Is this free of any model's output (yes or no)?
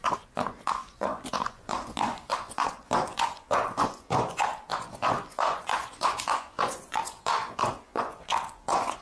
no